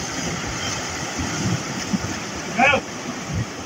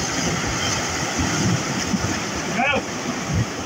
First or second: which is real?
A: second